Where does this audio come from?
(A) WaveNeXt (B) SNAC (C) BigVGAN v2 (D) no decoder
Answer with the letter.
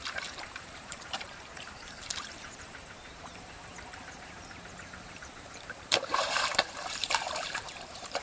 C